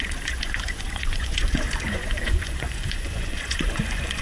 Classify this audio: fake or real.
fake